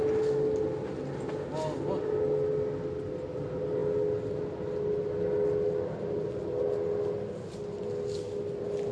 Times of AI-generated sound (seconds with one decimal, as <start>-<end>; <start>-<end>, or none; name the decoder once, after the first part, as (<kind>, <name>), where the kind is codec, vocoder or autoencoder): none